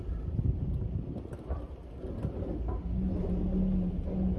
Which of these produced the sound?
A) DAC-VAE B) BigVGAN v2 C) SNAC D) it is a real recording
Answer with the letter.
D